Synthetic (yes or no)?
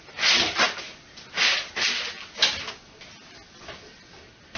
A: no